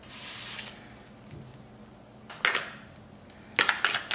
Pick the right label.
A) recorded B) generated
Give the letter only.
A